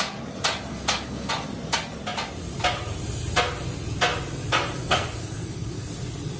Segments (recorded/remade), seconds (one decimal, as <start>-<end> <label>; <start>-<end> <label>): 0.0-0.7 recorded; 0.7-1.3 remade; 1.3-4.8 recorded; 4.8-5.9 remade; 5.9-6.4 recorded